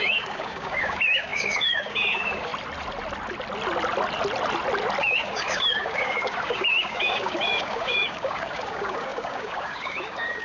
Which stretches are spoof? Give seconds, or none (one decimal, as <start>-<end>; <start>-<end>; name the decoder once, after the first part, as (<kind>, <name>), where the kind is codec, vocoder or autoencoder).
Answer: 0.0-2.5 (codec, DAC); 5.0-10.4